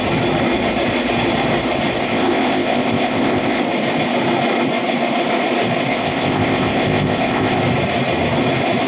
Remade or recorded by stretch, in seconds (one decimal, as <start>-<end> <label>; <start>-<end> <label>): 0.0-2.0 recorded; 2.0-3.6 remade; 3.6-5.9 recorded; 5.9-7.6 remade; 7.6-8.9 recorded